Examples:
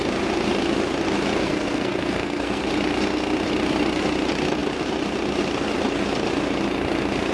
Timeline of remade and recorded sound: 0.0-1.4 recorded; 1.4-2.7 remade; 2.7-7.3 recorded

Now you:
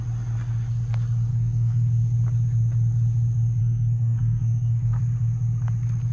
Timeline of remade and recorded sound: 0.0-1.3 recorded; 1.3-1.9 remade; 1.9-3.6 recorded; 3.6-5.0 remade; 5.0-6.1 recorded

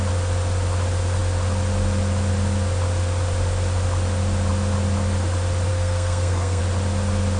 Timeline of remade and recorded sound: 0.0-5.7 recorded; 5.7-6.6 remade; 6.6-7.4 recorded